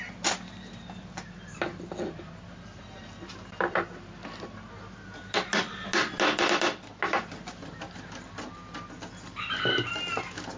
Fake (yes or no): no